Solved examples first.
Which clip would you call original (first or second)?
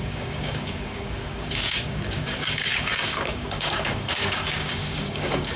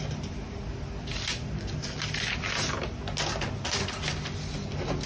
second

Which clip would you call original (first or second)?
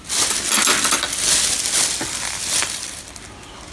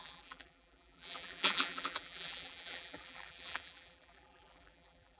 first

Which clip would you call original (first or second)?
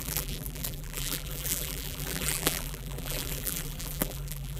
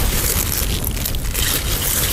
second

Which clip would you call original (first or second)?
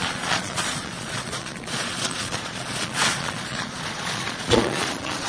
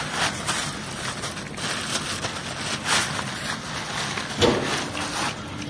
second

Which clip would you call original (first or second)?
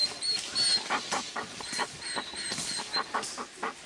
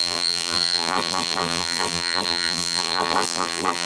first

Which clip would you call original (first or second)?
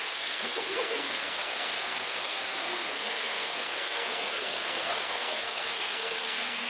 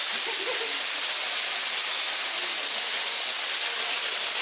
second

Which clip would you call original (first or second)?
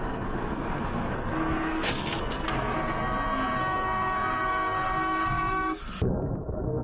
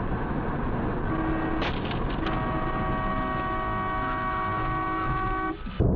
second